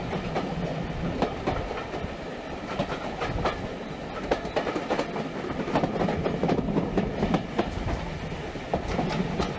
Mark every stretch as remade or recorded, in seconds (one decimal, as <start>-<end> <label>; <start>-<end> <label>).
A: 0.0-9.6 recorded